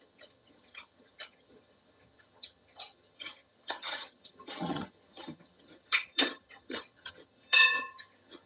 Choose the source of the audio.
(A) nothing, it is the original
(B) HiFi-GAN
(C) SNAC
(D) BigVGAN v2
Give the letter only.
B